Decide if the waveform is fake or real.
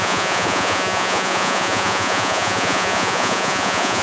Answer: fake